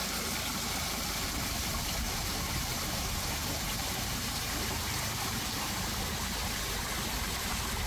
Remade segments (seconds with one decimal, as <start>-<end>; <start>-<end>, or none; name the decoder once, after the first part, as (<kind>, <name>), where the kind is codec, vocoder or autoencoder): 0.5-1.1 (vocoder, BigVGAN v2); 1.6-6.1